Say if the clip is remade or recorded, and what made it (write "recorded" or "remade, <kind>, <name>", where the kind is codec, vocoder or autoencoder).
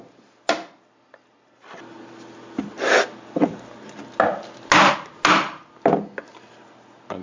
recorded